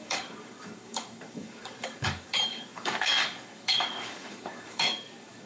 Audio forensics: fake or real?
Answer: fake